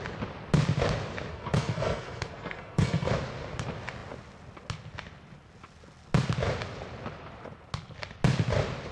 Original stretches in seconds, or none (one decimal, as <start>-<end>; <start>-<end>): 0.0-1.3; 3.1-8.9